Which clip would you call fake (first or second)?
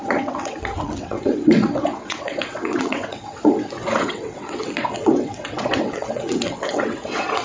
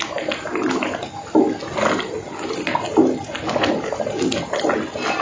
first